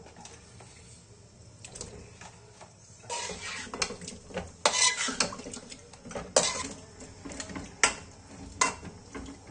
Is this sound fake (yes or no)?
no